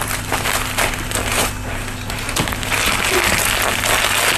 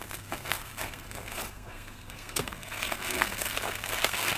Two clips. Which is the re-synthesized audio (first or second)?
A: second